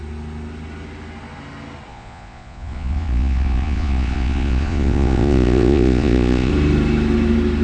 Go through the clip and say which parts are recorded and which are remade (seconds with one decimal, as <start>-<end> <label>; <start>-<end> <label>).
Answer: 0.0-1.9 recorded; 1.9-6.5 remade; 6.5-7.6 recorded